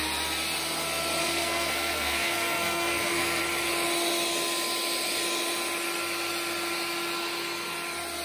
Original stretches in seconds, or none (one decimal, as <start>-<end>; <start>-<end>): 0.0-1.2; 3.4-8.2